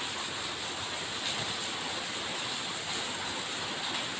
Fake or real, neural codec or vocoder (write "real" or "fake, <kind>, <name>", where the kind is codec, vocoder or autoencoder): real